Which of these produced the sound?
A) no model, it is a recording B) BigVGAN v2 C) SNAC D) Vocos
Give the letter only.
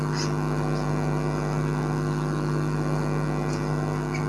A